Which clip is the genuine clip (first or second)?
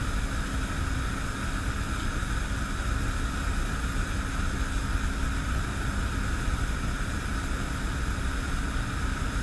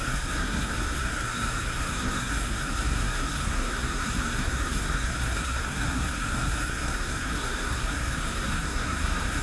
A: first